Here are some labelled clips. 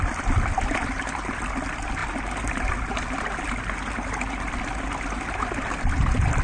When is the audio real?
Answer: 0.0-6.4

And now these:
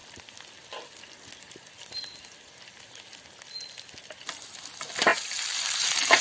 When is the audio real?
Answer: 0.0-6.2